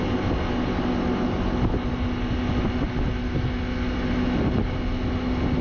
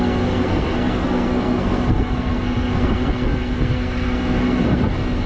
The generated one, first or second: second